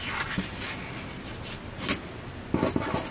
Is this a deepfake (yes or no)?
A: no